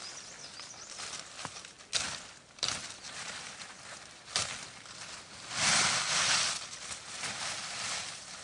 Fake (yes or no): no